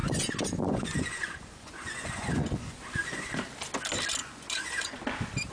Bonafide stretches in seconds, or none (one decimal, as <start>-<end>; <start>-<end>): 3.3-4.2; 5.0-5.5